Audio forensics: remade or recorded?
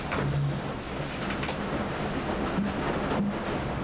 recorded